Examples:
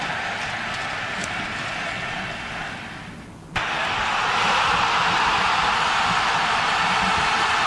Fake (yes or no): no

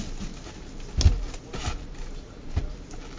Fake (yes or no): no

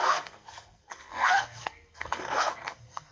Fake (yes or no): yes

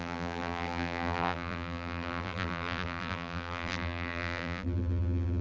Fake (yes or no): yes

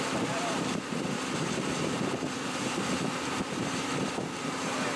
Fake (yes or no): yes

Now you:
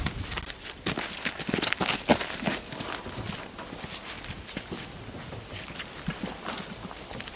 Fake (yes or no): no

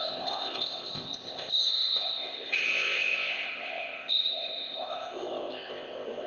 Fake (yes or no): yes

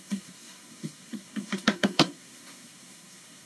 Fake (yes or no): yes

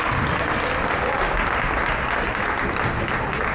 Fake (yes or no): no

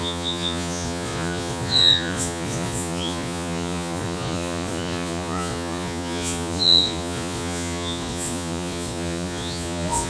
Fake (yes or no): yes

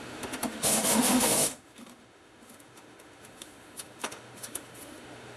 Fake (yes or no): yes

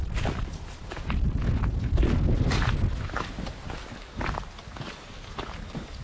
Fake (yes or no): no